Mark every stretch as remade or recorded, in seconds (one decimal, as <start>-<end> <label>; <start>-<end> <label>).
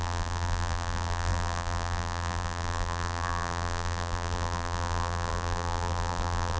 0.0-6.6 remade